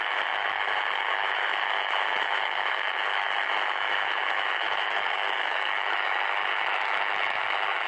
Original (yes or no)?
no